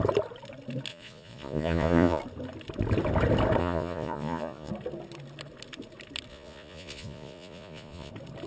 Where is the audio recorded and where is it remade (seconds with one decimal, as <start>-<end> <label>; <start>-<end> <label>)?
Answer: 0.0-0.9 recorded; 0.9-2.2 remade; 2.2-3.6 recorded; 3.6-4.7 remade; 4.7-6.3 recorded; 6.3-8.1 remade; 8.1-8.5 recorded